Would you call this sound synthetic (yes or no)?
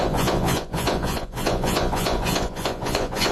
yes